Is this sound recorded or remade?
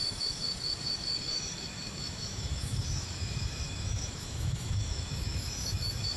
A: remade